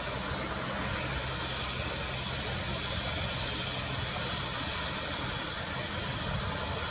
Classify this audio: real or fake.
real